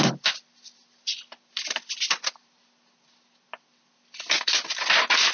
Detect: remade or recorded recorded